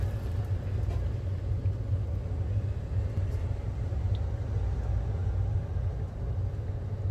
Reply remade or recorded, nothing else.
recorded